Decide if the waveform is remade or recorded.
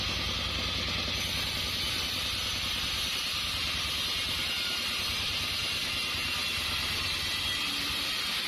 recorded